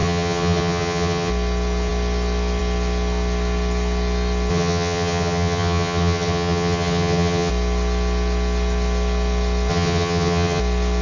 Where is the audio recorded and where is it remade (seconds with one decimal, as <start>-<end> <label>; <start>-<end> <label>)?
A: 0.0-1.3 remade; 1.3-4.5 recorded; 4.5-7.5 remade; 7.5-9.7 recorded; 9.7-10.6 remade; 10.6-11.0 recorded